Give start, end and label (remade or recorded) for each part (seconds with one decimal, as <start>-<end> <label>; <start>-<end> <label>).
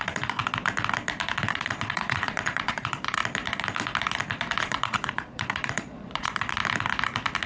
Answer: 0.0-0.4 remade; 0.4-1.5 recorded; 1.5-3.2 remade; 3.2-4.6 recorded; 4.6-6.6 remade; 6.6-7.5 recorded